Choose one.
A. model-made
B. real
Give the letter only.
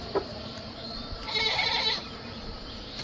A